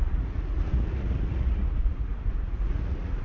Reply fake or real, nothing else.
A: fake